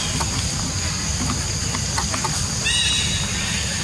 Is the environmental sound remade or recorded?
recorded